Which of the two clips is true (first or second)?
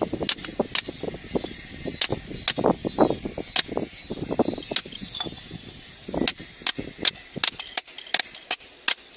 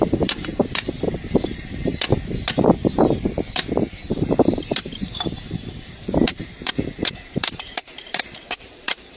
first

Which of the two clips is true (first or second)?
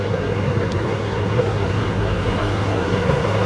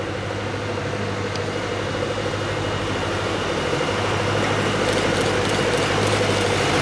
second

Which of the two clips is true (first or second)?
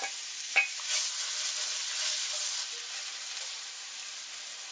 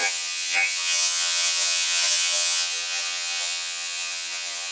first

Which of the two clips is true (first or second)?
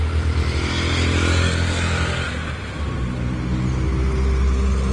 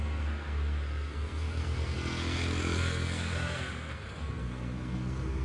first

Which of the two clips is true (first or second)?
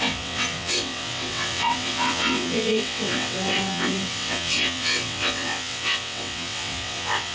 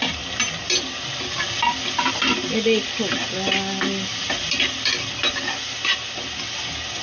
second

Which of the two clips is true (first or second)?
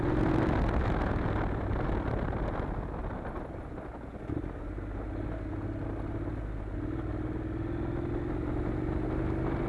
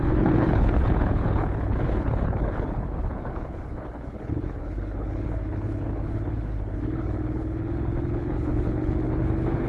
first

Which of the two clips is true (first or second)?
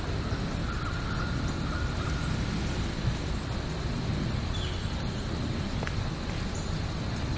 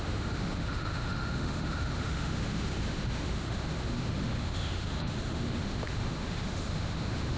first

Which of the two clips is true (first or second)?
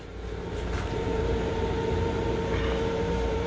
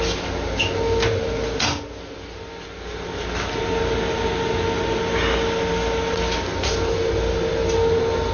second